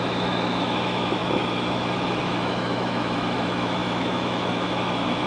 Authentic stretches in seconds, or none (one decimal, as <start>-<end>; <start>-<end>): none

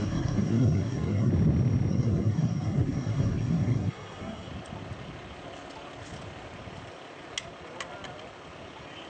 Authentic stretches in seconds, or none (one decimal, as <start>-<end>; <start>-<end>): 1.3-1.9; 4.5-9.1

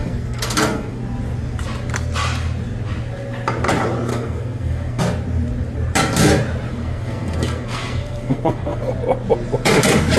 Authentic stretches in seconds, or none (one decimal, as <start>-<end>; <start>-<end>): 1.0-4.1; 5.0-6.7; 8.8-10.2

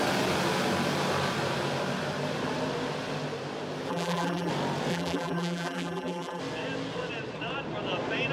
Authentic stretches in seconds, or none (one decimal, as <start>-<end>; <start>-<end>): 0.0-3.9; 4.5-4.9; 6.4-8.3

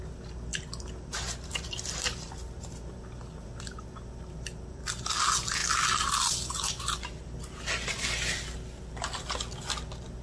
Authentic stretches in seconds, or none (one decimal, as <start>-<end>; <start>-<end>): 0.0-0.5; 4.3-10.2